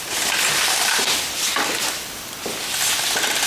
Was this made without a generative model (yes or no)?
yes